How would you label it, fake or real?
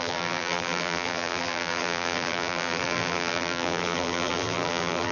fake